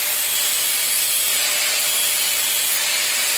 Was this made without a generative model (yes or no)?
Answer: yes